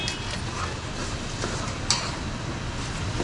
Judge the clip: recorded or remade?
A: recorded